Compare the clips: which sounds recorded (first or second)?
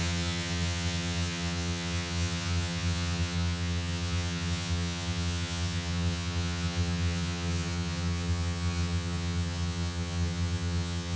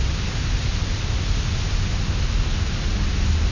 second